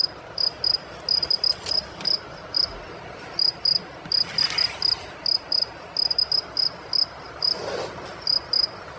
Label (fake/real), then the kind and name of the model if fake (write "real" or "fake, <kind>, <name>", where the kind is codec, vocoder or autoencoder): real